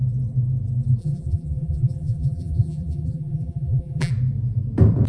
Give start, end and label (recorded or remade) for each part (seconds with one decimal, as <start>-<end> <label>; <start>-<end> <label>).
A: 0.0-1.0 recorded; 1.0-4.1 remade; 4.1-5.1 recorded